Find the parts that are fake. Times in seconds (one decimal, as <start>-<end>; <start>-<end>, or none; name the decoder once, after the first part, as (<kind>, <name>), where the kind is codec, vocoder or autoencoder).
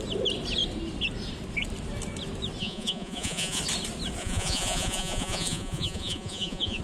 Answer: 2.6-3.6 (vocoder, Vocos); 4.2-6.8